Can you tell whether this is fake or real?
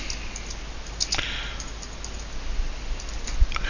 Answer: real